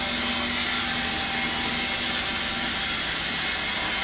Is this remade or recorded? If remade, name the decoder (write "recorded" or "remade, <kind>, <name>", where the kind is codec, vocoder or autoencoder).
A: recorded